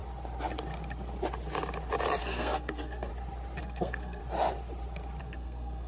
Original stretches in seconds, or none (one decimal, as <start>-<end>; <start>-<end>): 0.0-2.2; 3.1-3.6; 4.2-5.2